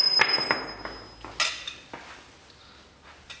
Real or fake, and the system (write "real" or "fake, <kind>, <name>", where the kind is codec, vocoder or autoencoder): real